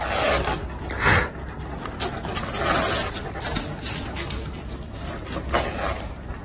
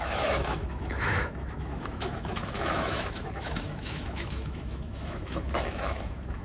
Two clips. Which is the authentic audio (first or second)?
first